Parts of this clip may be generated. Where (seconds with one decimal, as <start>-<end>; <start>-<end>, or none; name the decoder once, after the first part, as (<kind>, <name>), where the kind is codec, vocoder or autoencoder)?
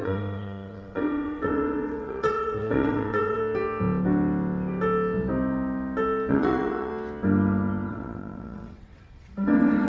0.0-3.4 (vocoder, WaveNeXt); 6.3-6.9; 7.9-9.9